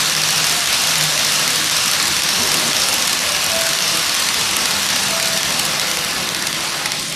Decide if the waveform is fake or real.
real